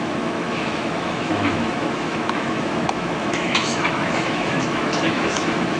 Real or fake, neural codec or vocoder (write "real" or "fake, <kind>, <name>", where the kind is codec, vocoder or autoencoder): fake, autoencoder, DAC-VAE